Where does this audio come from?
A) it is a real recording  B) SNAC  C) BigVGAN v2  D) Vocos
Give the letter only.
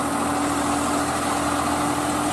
A